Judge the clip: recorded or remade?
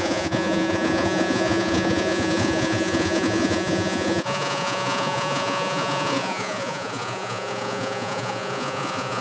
remade